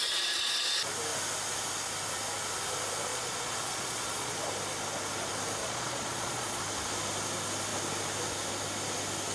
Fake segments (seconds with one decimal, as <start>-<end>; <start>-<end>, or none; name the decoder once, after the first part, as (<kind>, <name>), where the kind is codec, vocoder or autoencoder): 3.1-4.3 (vocoder, Vocos); 5.6-6.6